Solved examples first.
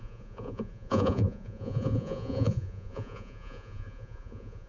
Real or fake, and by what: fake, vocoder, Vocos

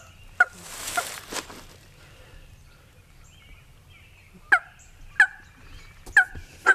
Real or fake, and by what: real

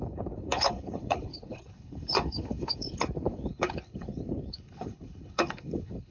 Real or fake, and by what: fake, codec, HILCodec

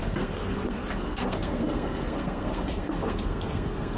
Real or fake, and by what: fake, codec, SNAC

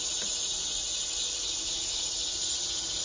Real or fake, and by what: real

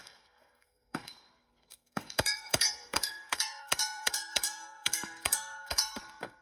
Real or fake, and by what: fake, codec, SNAC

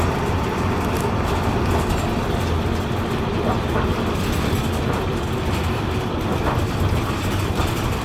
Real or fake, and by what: real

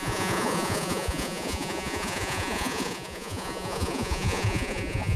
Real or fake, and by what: fake, vocoder, Vocos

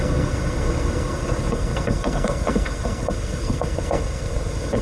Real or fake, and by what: fake, codec, SNAC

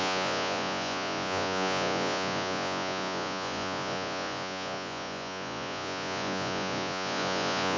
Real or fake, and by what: fake, vocoder, Vocos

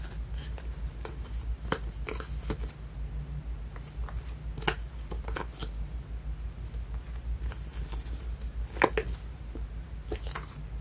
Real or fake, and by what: real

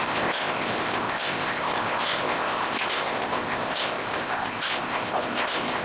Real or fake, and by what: fake, codec, ZipCodec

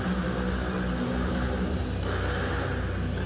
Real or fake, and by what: real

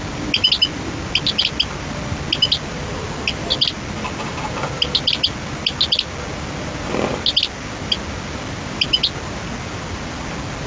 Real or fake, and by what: real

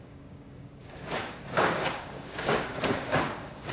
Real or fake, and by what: fake, codec, DAC